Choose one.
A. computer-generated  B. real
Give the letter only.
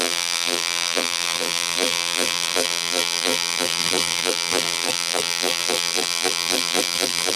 A